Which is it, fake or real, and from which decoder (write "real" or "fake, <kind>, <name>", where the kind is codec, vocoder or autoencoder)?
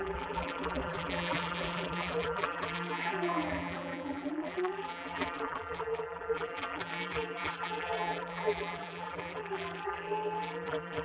fake, vocoder, BigVGAN v2